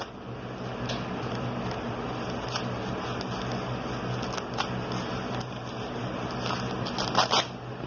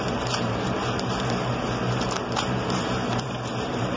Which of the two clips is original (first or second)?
first